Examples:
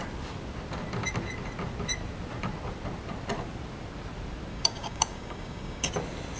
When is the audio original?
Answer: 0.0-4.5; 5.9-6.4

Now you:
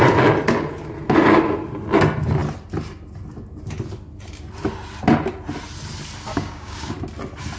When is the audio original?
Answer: 0.0-6.3; 6.9-7.6

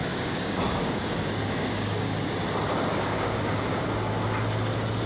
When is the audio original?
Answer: 2.3-2.9; 3.8-5.1

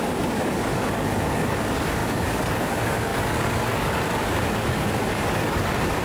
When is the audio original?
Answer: none